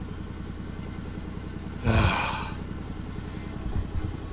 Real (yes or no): yes